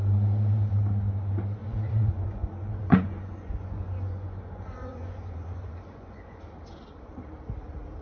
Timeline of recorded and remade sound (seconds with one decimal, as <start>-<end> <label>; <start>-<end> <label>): 0.0-1.6 recorded; 1.6-6.4 remade; 6.4-8.0 recorded